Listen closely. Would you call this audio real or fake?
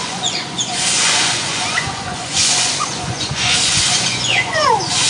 fake